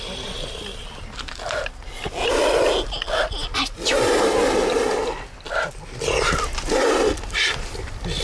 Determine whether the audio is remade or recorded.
recorded